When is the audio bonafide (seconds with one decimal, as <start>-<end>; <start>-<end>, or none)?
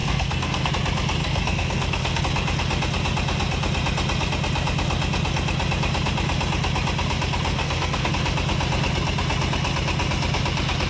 0.7-1.2; 2.2-7.5; 8.1-10.9